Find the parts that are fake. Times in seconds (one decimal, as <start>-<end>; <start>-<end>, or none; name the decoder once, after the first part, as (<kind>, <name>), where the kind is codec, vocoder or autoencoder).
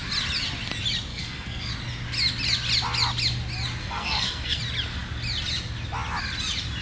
1.1-1.7 (codec, SNAC); 3.8-4.6